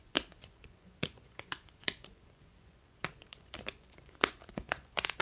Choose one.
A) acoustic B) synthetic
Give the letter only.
B